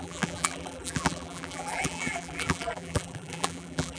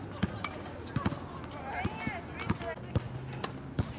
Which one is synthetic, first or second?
first